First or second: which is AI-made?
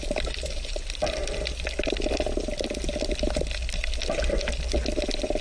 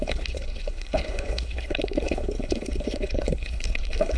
second